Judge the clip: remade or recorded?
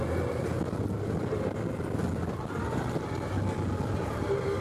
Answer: recorded